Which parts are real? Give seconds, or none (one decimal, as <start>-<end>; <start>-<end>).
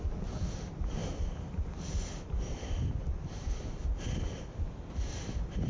0.0-5.7